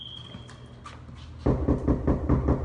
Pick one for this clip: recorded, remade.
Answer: recorded